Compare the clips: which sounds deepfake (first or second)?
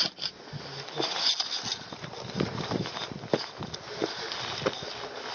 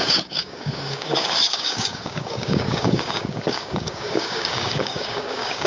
second